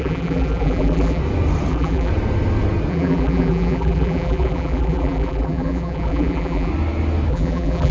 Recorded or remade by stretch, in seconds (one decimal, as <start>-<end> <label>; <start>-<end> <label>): 0.0-1.2 remade; 1.2-1.7 recorded; 1.7-2.1 remade; 2.1-2.9 recorded; 2.9-6.7 remade; 6.7-7.3 recorded; 7.3-7.9 remade